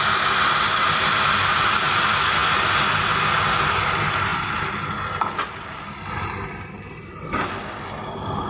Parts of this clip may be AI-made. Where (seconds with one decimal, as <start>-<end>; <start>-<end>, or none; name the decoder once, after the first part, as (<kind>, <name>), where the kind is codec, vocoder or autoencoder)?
none